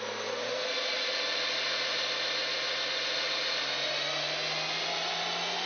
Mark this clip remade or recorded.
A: recorded